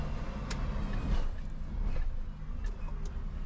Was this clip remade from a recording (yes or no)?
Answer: no